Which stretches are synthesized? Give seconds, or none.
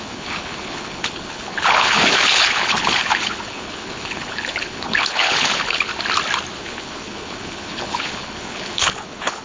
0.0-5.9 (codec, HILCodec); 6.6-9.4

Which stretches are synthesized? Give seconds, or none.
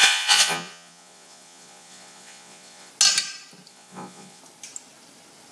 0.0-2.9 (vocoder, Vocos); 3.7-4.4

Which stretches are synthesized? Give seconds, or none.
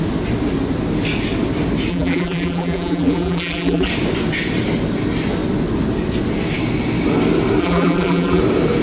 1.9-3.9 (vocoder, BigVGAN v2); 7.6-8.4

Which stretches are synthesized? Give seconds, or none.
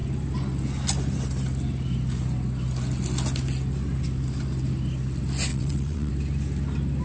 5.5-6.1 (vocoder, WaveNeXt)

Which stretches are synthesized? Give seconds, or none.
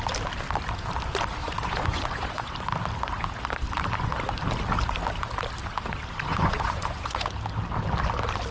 1.4-2.5 (vocoder, Vocos); 6.3-7.3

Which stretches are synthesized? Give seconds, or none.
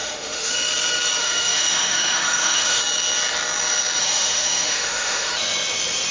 0.0-0.5 (autoencoder, DAC-VAE); 1.2-2.8; 4.0-5.3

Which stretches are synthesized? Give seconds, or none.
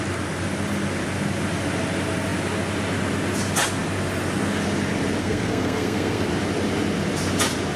5.2-6.3 (codec, SNAC)